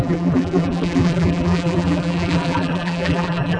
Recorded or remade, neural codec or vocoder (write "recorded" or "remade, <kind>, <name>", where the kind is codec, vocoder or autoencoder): remade, vocoder, BigVGAN v2